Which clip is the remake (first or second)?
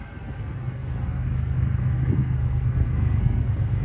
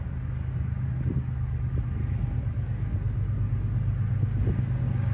first